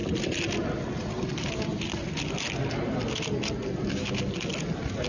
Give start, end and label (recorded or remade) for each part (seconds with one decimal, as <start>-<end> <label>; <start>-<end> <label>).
0.0-5.1 recorded